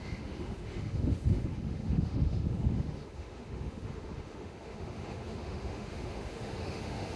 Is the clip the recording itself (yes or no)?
no